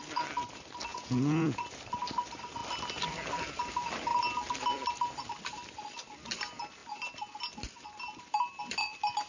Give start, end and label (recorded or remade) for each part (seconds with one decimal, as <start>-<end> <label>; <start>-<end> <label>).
0.0-0.9 recorded; 0.9-1.6 remade; 1.6-9.3 recorded